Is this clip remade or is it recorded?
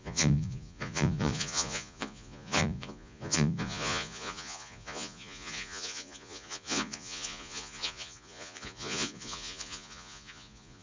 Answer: remade